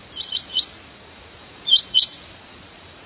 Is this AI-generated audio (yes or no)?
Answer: yes